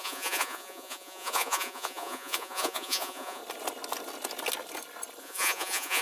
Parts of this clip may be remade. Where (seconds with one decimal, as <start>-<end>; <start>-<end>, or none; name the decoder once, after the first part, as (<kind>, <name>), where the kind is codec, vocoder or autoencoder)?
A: 0.0-3.4 (vocoder, Vocos); 5.2-6.0